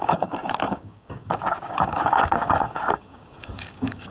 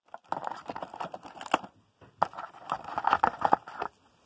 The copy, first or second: first